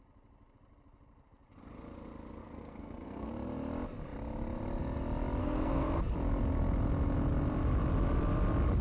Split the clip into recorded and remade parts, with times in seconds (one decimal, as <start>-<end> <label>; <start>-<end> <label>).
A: 0.0-2.4 recorded; 2.4-3.3 remade; 3.3-5.4 recorded; 5.4-6.0 remade; 6.0-8.8 recorded